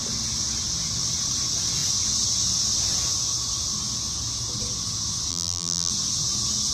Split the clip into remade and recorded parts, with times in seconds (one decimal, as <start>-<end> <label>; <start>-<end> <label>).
0.0-5.3 recorded; 5.3-5.9 remade; 5.9-6.7 recorded